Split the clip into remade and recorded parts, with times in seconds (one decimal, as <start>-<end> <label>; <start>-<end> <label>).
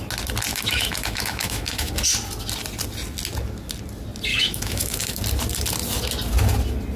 0.0-0.5 recorded; 0.5-1.9 remade; 1.9-4.3 recorded; 4.3-5.2 remade; 5.2-7.0 recorded